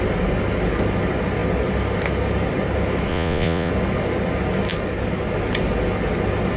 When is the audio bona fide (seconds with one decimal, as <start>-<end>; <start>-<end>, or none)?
0.0-3.1; 3.7-6.6